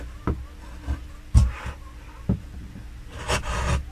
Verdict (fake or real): real